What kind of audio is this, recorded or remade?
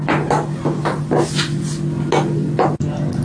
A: recorded